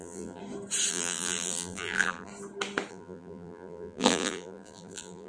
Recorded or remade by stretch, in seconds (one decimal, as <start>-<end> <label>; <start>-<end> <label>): 0.0-0.4 remade; 0.4-0.9 recorded; 0.9-2.3 remade; 2.3-2.9 recorded; 2.9-5.3 remade

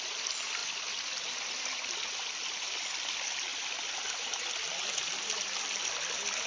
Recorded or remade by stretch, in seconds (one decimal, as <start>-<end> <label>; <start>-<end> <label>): 0.0-0.6 remade; 0.6-1.2 recorded; 1.2-3.5 remade; 3.5-5.4 recorded; 5.4-6.5 remade

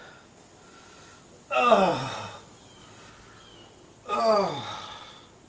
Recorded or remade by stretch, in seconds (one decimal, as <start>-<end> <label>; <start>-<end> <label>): 0.0-5.5 recorded

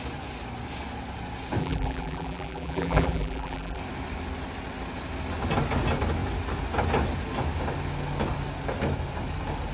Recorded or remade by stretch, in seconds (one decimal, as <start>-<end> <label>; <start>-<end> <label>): 0.0-1.6 recorded; 1.6-3.8 remade; 3.8-9.7 recorded

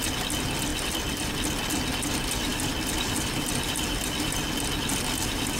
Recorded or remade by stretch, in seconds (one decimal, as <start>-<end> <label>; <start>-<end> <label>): 0.0-0.7 recorded; 0.7-1.3 remade; 1.3-5.6 recorded

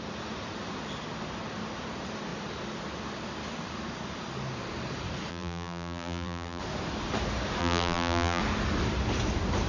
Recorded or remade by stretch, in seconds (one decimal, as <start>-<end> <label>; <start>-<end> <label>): 0.0-5.3 recorded; 5.3-6.6 remade; 6.6-7.6 recorded; 7.6-8.4 remade; 8.4-9.7 recorded

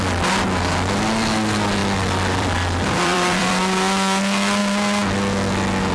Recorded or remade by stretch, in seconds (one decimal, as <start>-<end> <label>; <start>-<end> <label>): 0.0-1.8 recorded; 1.8-3.5 remade; 3.5-5.9 recorded

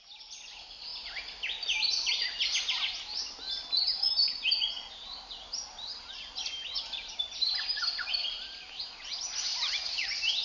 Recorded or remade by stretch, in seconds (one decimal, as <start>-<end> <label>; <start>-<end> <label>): 0.0-8.0 recorded; 8.0-8.8 remade; 8.8-9.5 recorded; 9.5-10.4 remade